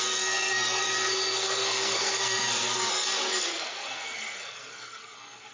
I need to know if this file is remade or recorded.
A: remade